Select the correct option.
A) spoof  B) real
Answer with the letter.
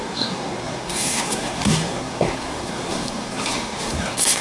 A